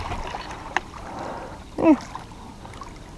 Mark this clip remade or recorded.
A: recorded